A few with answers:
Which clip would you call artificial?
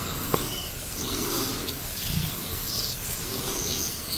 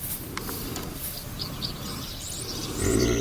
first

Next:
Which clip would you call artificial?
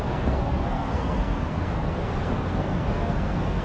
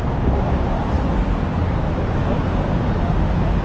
first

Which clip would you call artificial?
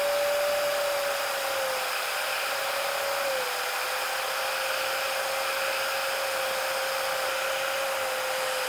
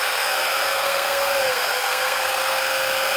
second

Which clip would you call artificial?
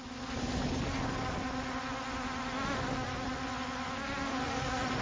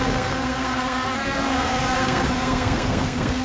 second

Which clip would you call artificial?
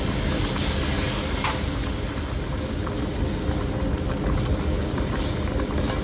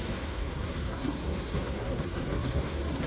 second